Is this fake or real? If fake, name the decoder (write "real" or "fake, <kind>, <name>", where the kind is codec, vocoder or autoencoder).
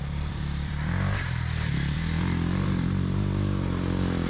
fake, vocoder, BigVGAN v2